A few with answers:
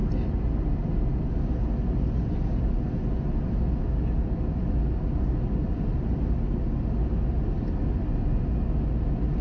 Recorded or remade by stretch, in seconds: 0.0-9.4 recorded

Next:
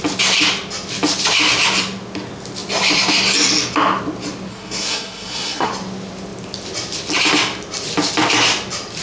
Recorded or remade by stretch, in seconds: 0.0-4.5 recorded; 4.5-5.7 remade; 5.7-9.0 recorded

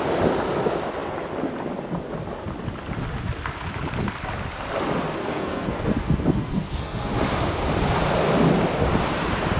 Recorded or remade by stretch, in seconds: 0.0-5.2 recorded; 5.2-7.1 remade; 7.1-9.6 recorded

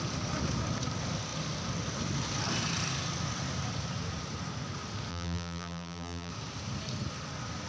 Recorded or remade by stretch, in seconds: 0.0-5.1 recorded; 5.1-6.3 remade; 6.3-7.7 recorded

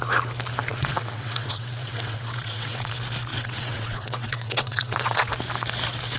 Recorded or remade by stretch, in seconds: 0.0-0.7 recorded; 0.7-2.9 remade; 2.9-3.3 recorded; 3.3-5.3 remade; 5.3-6.2 recorded

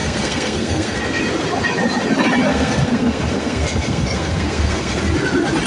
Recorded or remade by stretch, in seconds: 0.0-1.2 remade; 1.2-2.5 recorded; 2.5-5.0 remade; 5.0-5.7 recorded

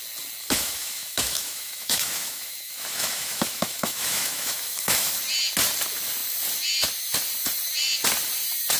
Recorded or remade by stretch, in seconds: 0.0-0.4 recorded; 0.4-5.2 remade; 5.2-8.8 recorded